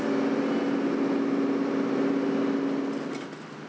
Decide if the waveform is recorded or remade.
recorded